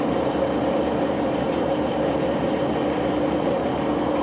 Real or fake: fake